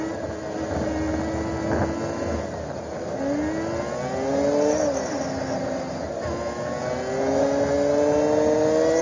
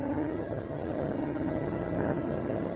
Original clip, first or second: first